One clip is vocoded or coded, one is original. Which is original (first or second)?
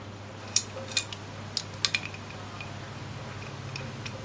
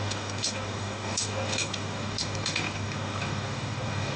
first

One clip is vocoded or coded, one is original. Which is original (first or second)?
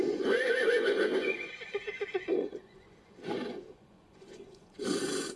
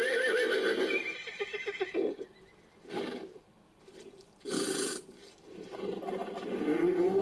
second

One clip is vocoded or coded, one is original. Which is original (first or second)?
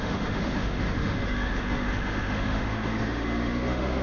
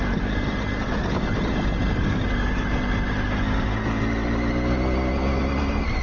second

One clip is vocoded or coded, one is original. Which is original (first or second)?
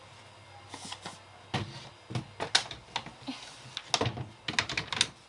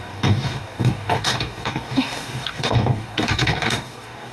first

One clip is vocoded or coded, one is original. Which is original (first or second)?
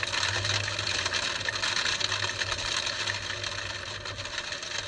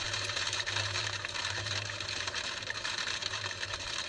first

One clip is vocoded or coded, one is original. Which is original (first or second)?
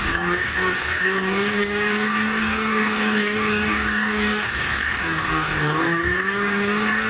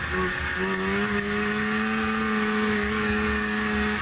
second